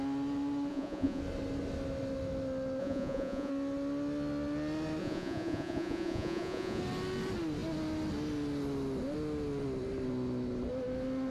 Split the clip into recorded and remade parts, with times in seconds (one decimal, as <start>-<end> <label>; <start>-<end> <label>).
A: 0.0-0.7 recorded; 0.7-1.2 remade; 1.2-2.8 recorded; 2.8-3.5 remade; 3.5-5.0 recorded; 5.0-6.8 remade; 6.8-11.3 recorded